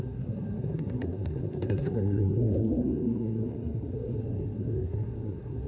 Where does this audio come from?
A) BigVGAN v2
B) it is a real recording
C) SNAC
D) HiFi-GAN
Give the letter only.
C